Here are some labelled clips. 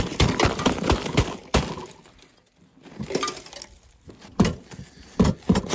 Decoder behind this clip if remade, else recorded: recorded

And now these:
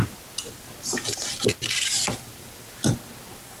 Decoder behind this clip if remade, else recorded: recorded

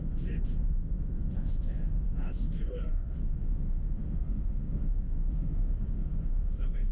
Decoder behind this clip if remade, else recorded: remade, autoencoder, DAC-VAE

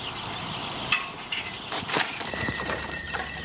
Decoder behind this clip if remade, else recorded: remade, vocoder, BigVGAN v2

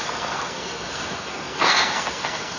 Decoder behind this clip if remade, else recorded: remade, codec, SNAC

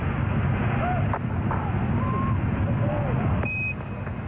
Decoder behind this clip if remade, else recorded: recorded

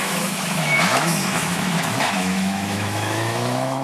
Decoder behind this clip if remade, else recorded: remade, autoencoder, DAC-VAE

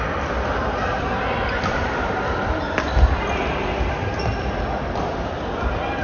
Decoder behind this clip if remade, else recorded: recorded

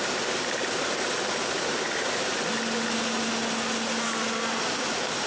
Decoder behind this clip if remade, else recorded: recorded